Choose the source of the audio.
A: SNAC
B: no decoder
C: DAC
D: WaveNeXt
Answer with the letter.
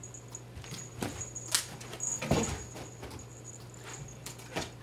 B